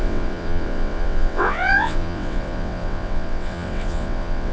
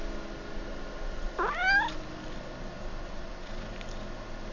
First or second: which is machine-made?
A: first